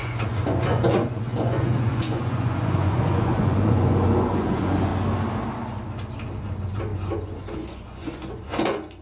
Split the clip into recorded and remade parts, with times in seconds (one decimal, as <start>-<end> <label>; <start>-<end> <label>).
0.0-4.9 remade; 4.9-6.4 recorded; 6.4-9.0 remade

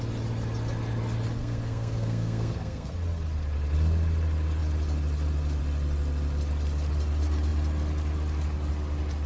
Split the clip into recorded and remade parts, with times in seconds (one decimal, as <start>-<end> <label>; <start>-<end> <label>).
0.0-1.4 recorded; 1.4-2.9 remade; 2.9-9.3 recorded

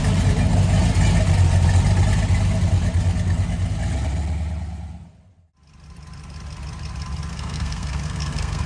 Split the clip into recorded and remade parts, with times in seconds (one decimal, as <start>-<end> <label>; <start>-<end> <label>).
0.0-7.3 recorded; 7.3-8.7 remade